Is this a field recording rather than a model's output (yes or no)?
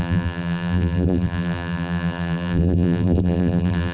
no